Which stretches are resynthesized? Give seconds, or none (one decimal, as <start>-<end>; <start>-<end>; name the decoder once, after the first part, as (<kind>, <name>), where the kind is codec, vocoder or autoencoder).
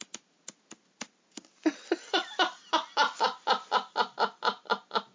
none